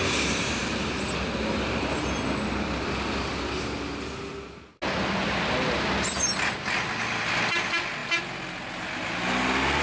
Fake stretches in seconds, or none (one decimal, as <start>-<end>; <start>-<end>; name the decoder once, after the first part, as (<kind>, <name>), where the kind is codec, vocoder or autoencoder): none